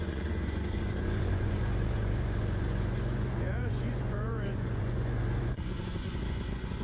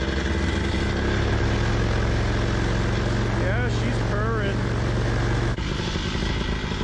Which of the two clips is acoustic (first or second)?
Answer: second